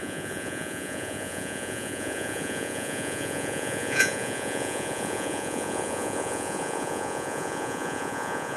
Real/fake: fake